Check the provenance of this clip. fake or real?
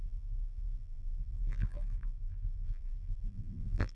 fake